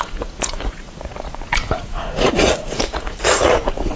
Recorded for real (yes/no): no